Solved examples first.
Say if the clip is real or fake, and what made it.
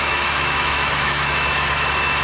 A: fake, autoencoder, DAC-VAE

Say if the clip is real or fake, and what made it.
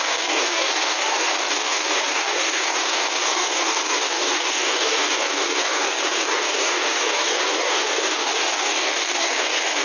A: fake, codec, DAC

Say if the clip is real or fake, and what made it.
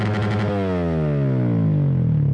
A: real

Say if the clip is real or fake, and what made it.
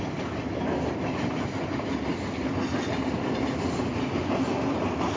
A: fake, vocoder, BigVGAN v2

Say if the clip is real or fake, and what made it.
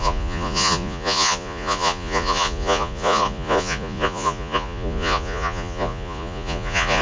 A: fake, vocoder, Vocos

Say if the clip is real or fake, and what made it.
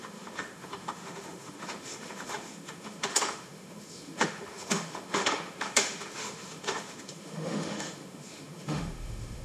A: fake, autoencoder, DAC-VAE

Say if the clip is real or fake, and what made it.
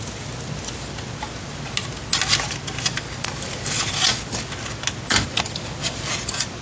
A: real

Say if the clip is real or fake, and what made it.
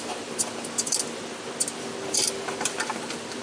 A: real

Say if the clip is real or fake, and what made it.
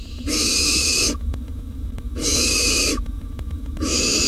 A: fake, autoencoder, DAC-VAE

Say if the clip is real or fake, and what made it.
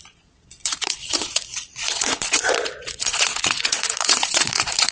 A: fake, vocoder, Vocos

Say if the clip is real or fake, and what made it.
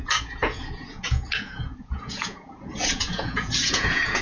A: fake, vocoder, Vocos